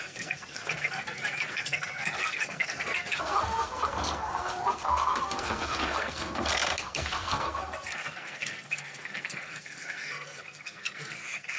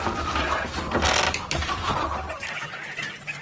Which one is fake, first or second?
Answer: first